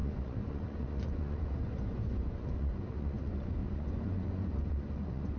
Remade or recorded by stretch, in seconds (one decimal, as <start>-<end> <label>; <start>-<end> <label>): 0.0-5.4 remade